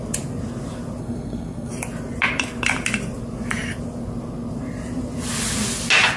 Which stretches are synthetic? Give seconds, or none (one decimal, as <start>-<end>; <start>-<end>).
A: 1.0-1.7